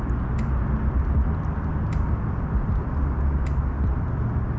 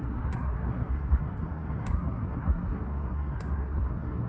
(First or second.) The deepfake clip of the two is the second